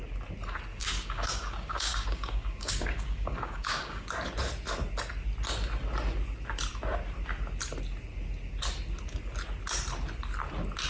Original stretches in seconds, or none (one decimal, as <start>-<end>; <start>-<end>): 0.0-0.7; 4.1-10.9